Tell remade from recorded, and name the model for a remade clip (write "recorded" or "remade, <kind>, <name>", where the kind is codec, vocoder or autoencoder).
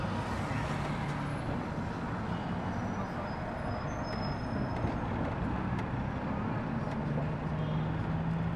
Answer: recorded